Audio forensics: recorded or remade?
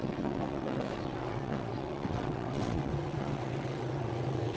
remade